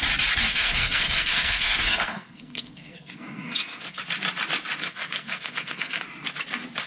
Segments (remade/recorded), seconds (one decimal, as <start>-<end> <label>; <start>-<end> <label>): 0.0-0.5 recorded; 0.5-4.0 remade; 4.0-4.8 recorded; 4.8-6.0 remade; 6.0-6.9 recorded